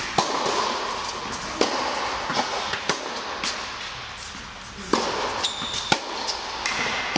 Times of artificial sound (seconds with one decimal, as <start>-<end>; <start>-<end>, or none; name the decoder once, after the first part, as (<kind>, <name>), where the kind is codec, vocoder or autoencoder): 2.3-3.0 (vocoder, Vocos)